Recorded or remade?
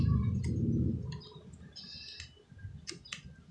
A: recorded